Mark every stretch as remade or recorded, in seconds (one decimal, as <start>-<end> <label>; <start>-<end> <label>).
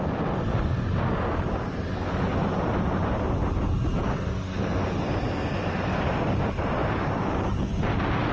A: 0.0-2.3 recorded; 2.3-2.9 remade; 2.9-8.3 recorded